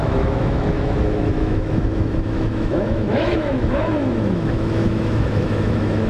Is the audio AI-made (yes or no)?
yes